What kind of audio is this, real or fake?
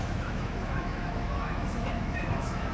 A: fake